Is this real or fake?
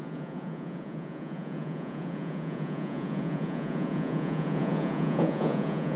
fake